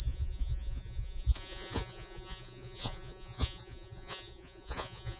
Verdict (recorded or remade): remade